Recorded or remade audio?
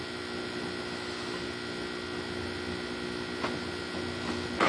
recorded